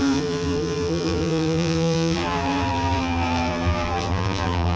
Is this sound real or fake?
fake